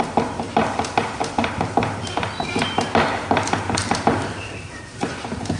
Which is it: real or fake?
fake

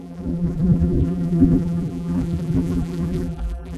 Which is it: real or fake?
fake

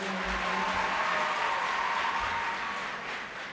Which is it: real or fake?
real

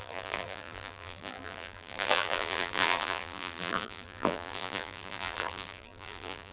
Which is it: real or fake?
fake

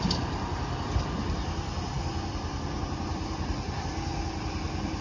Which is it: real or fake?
real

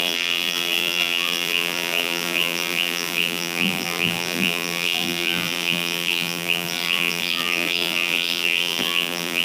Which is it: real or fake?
fake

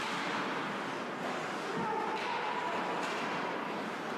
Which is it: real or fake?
real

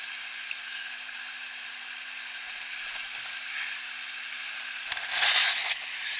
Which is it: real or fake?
real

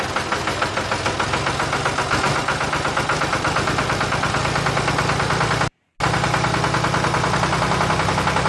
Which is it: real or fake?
real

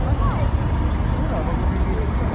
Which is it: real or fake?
real